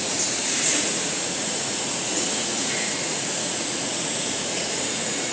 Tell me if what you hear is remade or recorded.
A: remade